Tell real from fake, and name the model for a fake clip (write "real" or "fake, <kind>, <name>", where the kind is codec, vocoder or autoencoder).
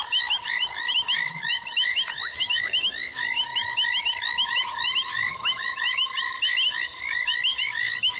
fake, autoencoder, DAC-VAE